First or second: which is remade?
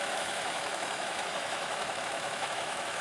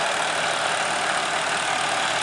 first